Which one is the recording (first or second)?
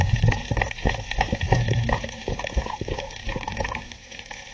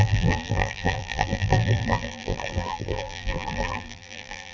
first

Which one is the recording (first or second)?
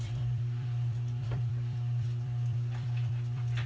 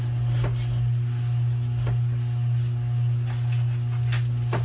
second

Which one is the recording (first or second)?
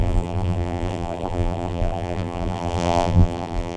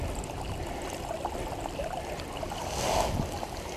second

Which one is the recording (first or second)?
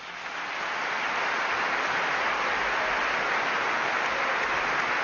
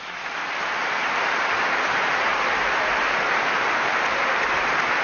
first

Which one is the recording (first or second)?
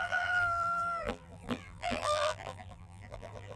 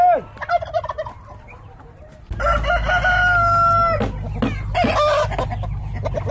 second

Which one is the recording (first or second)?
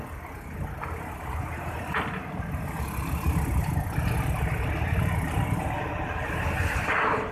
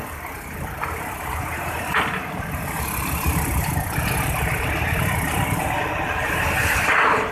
first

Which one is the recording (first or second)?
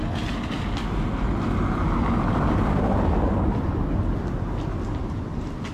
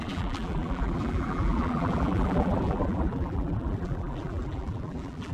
first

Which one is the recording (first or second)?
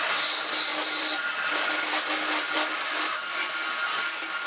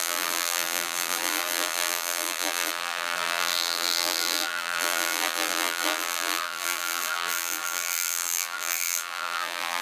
first